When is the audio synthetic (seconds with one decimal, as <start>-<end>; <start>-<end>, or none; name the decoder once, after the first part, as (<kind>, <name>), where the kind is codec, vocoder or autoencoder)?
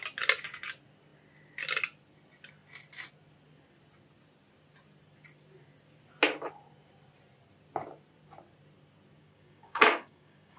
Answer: 9.2-10.6 (codec, DAC)